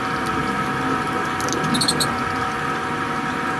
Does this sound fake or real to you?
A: real